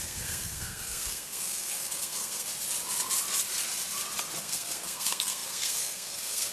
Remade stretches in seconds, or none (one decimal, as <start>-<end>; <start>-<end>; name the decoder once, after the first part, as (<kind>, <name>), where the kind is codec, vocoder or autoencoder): 0.0-2.5 (codec, SNAC); 4.4-6.5